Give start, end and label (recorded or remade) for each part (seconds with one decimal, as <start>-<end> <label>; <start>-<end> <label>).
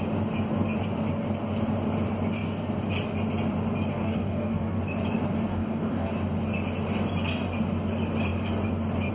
0.0-3.9 recorded; 3.9-4.8 remade; 4.8-5.5 recorded; 5.5-6.1 remade; 6.1-9.1 recorded